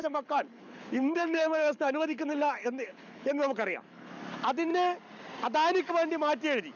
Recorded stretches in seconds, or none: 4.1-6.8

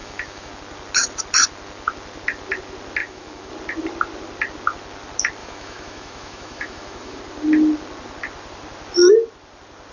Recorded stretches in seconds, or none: 0.5-3.0; 3.5-5.4; 7.2-9.9

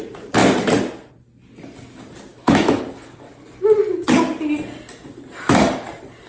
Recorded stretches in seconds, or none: 0.0-2.3; 2.8-6.3